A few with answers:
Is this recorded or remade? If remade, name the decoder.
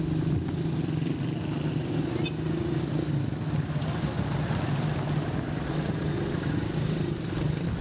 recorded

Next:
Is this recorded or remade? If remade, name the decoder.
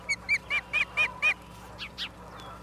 recorded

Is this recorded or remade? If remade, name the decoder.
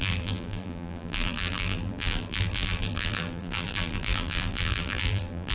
remade, vocoder, BigVGAN v2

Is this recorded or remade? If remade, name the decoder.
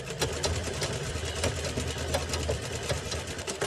recorded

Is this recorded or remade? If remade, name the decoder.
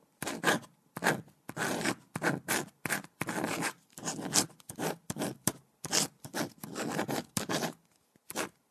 recorded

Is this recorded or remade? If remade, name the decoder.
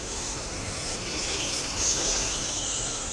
remade, codec, SNAC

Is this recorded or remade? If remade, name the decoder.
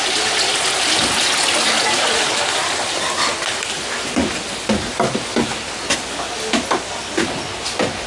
recorded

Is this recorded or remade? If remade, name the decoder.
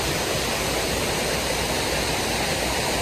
remade, vocoder, BigVGAN v2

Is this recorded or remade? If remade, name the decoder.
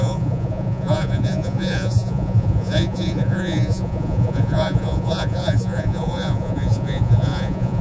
remade, vocoder, Vocos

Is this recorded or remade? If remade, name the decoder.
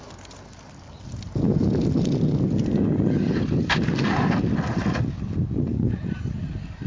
recorded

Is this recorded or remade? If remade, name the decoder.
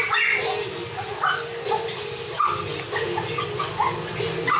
recorded